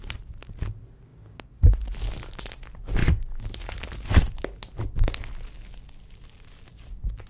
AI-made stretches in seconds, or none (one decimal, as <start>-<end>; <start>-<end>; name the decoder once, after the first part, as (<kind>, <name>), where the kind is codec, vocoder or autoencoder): none